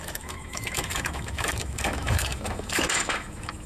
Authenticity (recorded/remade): remade